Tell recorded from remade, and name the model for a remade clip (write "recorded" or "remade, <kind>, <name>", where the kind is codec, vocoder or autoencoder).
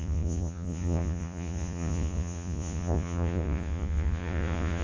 remade, vocoder, Vocos